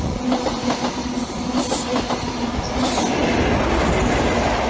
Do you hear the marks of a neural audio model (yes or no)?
no